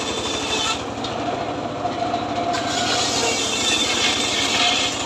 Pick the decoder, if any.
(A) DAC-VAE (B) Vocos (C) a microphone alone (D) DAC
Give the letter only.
C